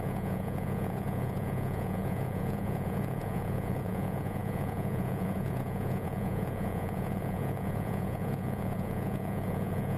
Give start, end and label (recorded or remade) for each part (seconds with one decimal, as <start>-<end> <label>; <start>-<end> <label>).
0.0-10.0 remade